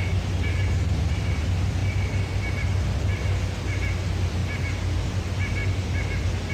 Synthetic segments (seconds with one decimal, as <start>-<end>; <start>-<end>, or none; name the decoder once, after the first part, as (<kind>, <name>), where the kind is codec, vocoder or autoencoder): none